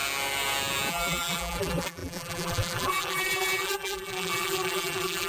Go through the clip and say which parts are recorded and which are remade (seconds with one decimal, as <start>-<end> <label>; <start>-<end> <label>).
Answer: 0.0-0.9 recorded; 0.9-5.3 remade